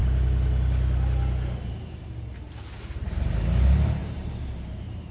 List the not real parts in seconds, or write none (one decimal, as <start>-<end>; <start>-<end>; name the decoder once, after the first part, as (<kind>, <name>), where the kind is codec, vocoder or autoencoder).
4.0-5.1 (vocoder, BigVGAN v2)